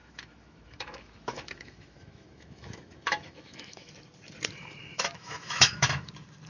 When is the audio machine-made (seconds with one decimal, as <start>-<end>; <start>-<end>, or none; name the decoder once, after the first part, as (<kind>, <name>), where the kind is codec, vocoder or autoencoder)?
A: 0.0-3.9 (autoencoder, DAC-VAE); 4.9-6.1